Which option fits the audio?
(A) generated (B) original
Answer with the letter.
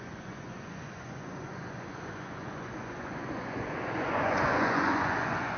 A